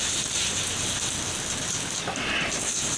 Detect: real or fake real